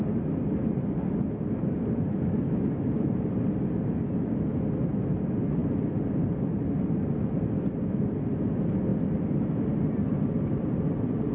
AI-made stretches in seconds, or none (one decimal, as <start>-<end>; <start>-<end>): none